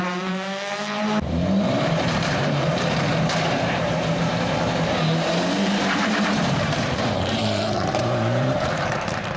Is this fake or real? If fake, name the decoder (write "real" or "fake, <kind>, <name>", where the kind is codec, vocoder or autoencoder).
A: fake, vocoder, BigVGAN v2